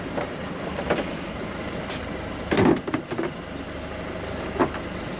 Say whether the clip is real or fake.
real